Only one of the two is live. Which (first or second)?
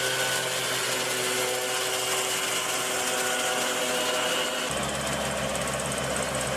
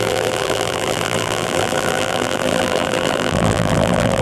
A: first